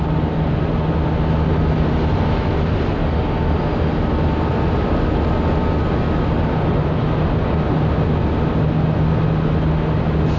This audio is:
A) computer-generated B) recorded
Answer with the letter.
B